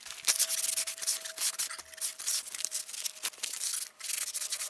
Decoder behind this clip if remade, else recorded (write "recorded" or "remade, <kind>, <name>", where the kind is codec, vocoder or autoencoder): recorded